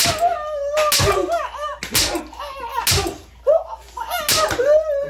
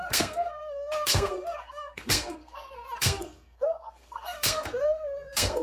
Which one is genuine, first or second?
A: first